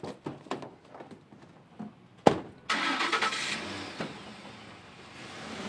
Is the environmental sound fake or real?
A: real